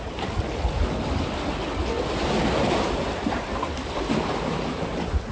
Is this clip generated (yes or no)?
no